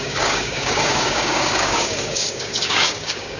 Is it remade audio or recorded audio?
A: remade